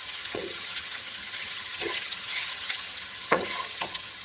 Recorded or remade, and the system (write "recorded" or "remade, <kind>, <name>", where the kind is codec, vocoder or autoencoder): remade, vocoder, HiFi-GAN